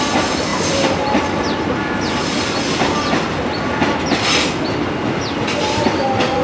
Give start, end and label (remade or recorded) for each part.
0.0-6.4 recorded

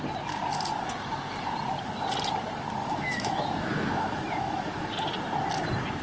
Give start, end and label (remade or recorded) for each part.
0.0-2.8 recorded; 2.8-4.9 remade; 4.9-6.0 recorded

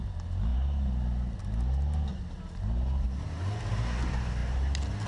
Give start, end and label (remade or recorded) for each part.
0.0-5.1 recorded